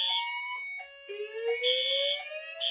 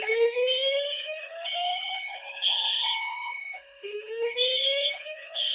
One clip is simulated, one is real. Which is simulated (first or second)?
second